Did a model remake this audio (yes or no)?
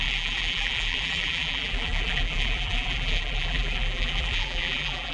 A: yes